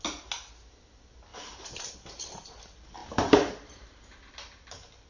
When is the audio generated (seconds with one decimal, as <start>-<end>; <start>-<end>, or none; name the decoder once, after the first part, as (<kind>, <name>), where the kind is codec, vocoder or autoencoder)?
1.3-1.9 (vocoder, BigVGAN v2); 3.0-4.3